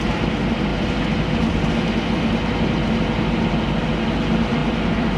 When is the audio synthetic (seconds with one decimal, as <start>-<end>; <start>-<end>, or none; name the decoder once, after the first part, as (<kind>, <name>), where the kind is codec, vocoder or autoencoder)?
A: none